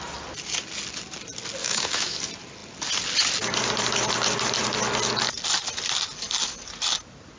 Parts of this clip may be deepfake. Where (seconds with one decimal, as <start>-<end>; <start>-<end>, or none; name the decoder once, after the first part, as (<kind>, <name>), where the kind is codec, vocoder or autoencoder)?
1.6-2.2 (autoencoder, DAC-VAE)